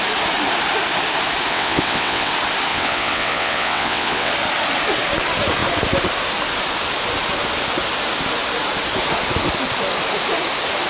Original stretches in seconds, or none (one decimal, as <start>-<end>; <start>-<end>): 0.0-1.5; 2.3-2.7; 4.3-10.9